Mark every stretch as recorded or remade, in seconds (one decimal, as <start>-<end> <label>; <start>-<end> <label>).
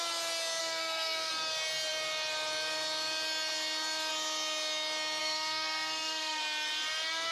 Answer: 0.0-0.6 recorded; 0.6-1.3 remade; 1.3-5.2 recorded; 5.2-6.4 remade; 6.4-7.3 recorded